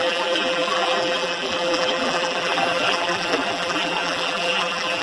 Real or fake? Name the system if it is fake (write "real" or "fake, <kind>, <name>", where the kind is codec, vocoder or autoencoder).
fake, vocoder, BigVGAN v2